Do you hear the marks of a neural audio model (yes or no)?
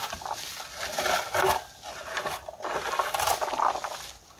no